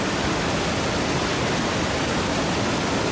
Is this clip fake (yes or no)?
no